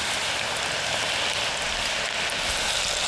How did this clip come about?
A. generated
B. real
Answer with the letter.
B